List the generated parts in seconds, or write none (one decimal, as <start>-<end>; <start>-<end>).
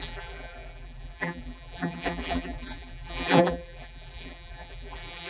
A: 0.0-5.3